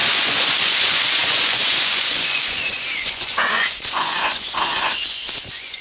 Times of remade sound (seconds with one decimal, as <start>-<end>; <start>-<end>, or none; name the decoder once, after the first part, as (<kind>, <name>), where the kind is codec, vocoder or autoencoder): 0.0-5.8 (vocoder, Vocos)